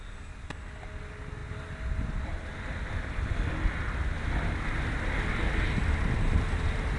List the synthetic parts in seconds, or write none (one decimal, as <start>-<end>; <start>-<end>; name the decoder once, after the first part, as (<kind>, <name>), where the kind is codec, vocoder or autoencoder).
none